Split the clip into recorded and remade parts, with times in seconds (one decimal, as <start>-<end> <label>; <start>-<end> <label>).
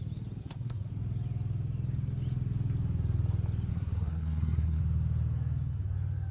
0.0-0.4 recorded; 0.4-0.9 remade; 0.9-3.7 recorded; 3.7-4.8 remade; 4.8-6.3 recorded